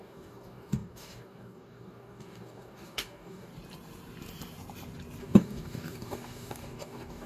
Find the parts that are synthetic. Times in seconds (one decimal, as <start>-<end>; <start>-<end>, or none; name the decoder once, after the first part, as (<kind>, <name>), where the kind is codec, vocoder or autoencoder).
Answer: 0.0-3.5 (codec, DAC); 5.2-7.3